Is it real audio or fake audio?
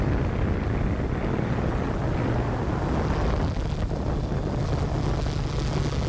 real